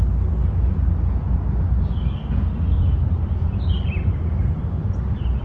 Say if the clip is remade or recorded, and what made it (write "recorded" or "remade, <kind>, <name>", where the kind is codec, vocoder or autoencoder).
recorded